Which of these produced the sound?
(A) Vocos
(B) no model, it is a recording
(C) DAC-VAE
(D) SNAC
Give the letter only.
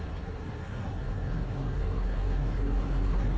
D